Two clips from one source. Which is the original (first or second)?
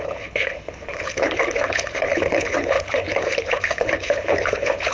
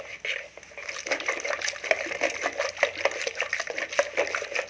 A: second